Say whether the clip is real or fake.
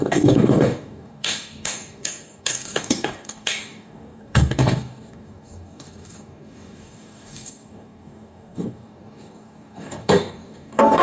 fake